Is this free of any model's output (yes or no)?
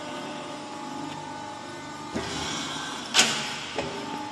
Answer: yes